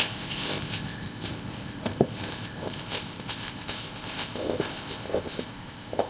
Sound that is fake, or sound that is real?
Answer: fake